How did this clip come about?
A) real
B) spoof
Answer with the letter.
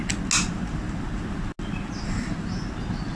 A